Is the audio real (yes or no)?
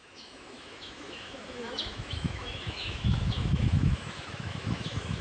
no